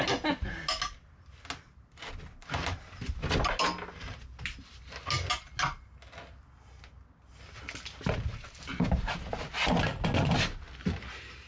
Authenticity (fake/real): real